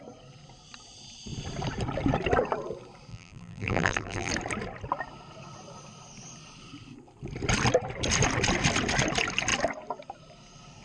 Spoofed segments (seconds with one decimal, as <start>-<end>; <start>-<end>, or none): 3.1-4.3

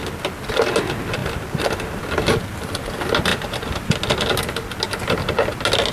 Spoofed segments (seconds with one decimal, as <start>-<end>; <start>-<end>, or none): 1.2-2.0; 3.3-3.9

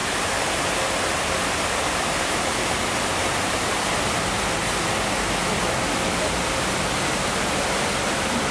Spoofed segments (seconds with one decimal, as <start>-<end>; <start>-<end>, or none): 0.0-5.0; 5.4-6.7

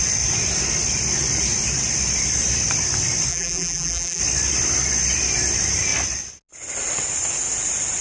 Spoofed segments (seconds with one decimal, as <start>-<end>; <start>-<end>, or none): 3.3-4.2

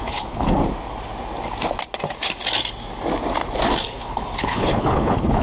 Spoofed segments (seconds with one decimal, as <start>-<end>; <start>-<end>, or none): 0.0-0.6; 3.8-5.4

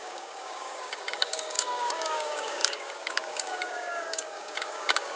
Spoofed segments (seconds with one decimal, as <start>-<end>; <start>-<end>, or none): 0.0-5.2

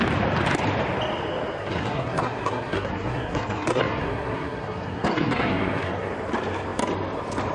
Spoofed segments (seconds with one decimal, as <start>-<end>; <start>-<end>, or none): 1.6-6.1

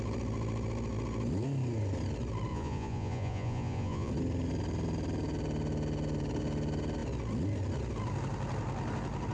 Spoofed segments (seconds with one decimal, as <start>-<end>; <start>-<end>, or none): 2.5-4.1